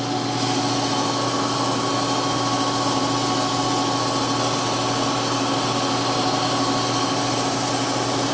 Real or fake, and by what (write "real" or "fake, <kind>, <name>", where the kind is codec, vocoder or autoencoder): real